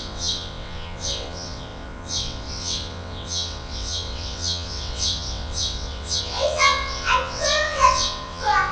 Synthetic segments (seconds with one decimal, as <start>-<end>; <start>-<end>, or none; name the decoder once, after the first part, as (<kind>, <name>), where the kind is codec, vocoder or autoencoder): 0.0-8.7 (vocoder, WaveNeXt)